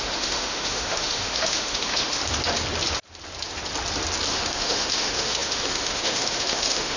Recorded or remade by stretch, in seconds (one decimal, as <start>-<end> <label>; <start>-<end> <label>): 0.0-2.2 remade; 2.2-4.3 recorded; 4.3-7.0 remade

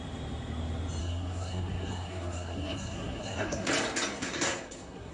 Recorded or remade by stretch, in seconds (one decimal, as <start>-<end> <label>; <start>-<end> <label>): 0.0-1.0 recorded; 1.0-3.7 remade; 3.7-4.2 recorded; 4.2-5.1 remade

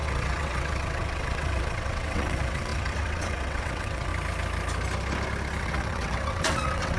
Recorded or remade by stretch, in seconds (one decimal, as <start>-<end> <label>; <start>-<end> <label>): 0.0-4.1 remade; 4.1-5.6 recorded; 5.6-7.0 remade

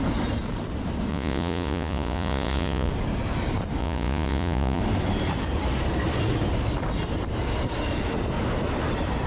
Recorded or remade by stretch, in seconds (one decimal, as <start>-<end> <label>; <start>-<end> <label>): 0.0-1.1 recorded; 1.1-2.9 remade; 2.9-3.8 recorded; 3.8-4.8 remade; 4.8-9.3 recorded